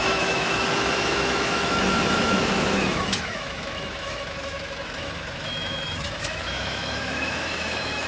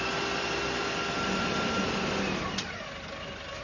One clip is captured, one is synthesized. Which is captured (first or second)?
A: second